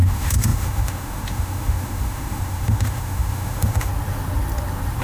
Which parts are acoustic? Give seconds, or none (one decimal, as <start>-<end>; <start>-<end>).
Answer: 3.9-5.0